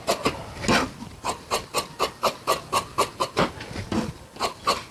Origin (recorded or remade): recorded